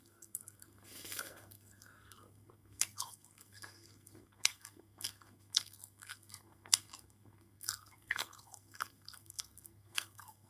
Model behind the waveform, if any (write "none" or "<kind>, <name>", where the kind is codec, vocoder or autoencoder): codec, SNAC